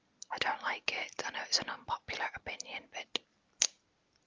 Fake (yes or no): no